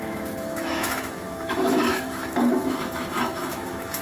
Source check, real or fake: fake